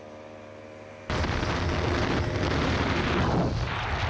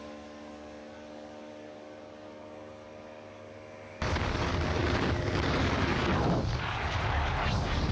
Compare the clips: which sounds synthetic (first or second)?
second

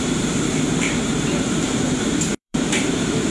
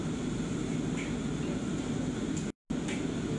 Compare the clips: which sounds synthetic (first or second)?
first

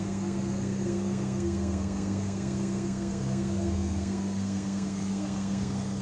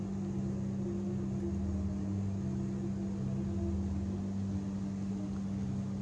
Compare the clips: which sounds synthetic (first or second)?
first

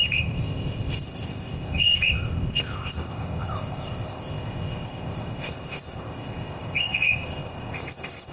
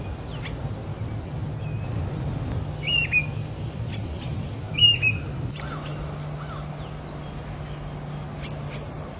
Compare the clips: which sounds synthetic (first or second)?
first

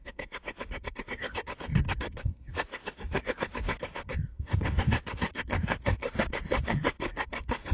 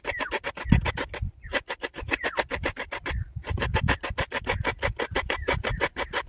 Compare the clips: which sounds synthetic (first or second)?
first